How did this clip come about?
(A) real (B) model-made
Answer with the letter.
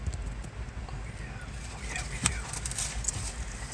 A